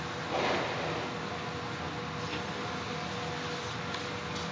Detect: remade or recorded recorded